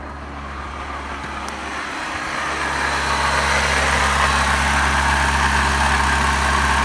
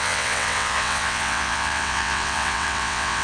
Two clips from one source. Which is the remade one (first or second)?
second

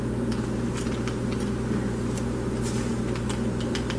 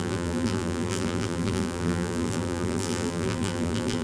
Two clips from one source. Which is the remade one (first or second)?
second